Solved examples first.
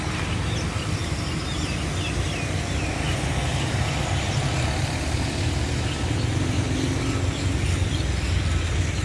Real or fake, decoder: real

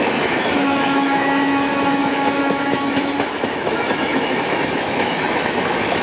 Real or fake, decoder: fake, autoencoder, DAC-VAE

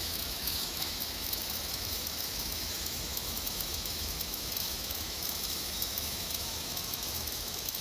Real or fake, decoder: fake, autoencoder, DAC-VAE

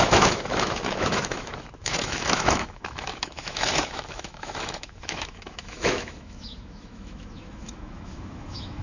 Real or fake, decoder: fake, autoencoder, DAC-VAE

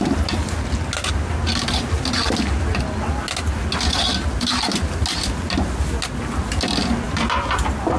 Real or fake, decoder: real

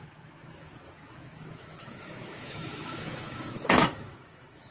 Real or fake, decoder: fake, autoencoder, DAC-VAE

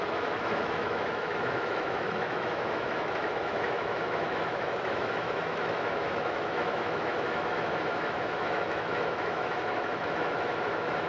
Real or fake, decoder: fake, autoencoder, DAC-VAE